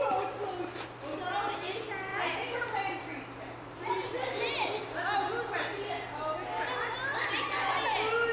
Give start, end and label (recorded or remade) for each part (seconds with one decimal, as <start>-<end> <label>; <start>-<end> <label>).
0.0-8.3 recorded